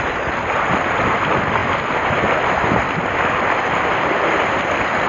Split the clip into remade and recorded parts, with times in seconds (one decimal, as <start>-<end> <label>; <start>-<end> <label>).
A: 0.0-5.1 recorded